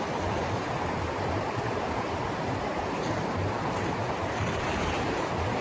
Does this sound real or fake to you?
fake